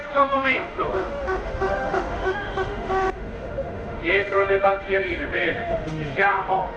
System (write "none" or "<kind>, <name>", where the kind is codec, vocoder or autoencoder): autoencoder, DAC-VAE